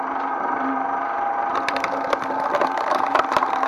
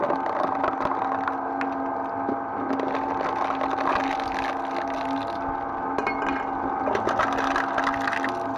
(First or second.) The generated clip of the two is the first